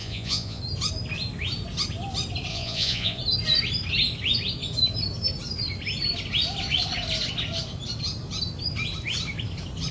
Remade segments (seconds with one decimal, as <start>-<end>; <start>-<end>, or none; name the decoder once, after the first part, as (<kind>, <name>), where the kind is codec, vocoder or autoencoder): 0.0-0.6 (vocoder, Vocos); 2.5-3.2